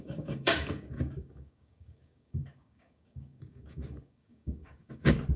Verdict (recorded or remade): remade